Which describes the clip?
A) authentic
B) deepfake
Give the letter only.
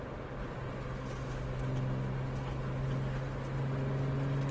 A